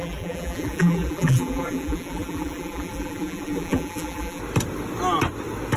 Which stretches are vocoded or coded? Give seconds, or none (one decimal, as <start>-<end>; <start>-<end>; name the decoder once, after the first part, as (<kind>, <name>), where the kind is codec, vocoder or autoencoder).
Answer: 0.0-4.4 (vocoder, BigVGAN v2)